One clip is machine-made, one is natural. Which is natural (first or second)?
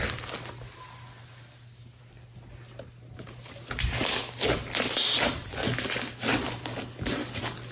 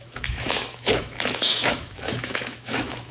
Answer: first